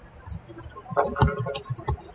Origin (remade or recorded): recorded